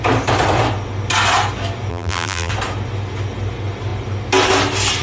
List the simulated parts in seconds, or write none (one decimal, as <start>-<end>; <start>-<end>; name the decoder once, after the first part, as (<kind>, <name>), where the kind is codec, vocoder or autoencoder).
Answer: 1.9-2.5 (vocoder, BigVGAN v2)